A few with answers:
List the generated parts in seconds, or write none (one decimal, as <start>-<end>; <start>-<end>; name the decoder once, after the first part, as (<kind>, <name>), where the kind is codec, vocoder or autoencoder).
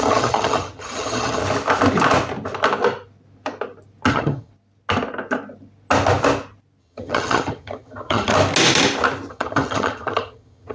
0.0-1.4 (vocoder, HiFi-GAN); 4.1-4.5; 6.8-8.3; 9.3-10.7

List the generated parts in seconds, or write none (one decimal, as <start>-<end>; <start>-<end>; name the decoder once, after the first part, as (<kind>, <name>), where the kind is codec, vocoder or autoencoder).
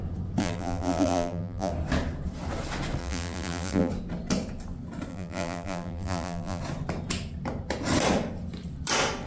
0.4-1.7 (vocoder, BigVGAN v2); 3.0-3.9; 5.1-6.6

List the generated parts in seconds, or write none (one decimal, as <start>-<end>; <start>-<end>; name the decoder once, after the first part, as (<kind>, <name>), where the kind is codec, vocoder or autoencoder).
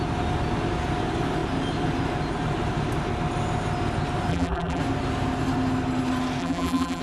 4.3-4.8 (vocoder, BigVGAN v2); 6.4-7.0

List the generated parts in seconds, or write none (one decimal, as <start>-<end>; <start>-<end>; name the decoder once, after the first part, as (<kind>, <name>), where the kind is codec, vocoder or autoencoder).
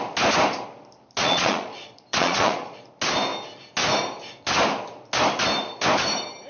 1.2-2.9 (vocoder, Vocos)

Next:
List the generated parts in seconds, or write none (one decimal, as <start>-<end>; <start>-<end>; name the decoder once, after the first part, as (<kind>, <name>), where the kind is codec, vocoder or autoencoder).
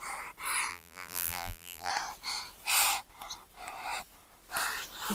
0.7-1.9 (vocoder, BigVGAN v2)